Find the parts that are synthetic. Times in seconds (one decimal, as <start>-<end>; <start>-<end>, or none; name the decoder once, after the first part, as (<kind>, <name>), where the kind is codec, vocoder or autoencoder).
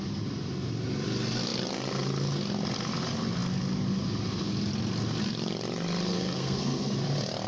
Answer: 6.1-7.0 (codec, SNAC)